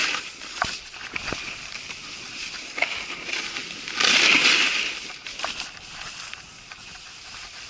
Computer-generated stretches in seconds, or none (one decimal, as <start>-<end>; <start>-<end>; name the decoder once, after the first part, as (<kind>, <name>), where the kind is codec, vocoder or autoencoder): 0.0-2.5 (vocoder, BigVGAN v2)